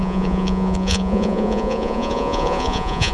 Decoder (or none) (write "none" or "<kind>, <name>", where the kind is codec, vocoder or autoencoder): vocoder, Vocos